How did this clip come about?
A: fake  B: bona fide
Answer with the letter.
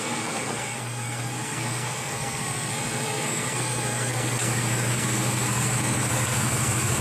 A